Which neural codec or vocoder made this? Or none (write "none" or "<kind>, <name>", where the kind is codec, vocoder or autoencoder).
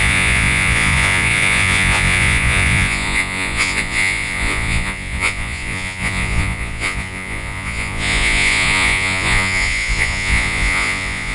vocoder, Vocos